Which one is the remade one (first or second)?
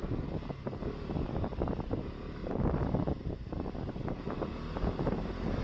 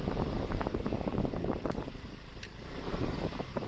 second